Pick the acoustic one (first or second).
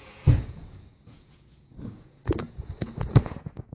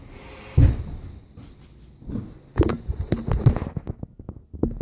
second